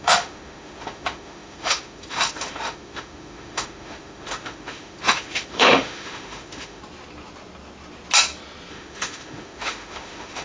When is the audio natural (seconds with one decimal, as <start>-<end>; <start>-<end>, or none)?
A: 6.8-8.7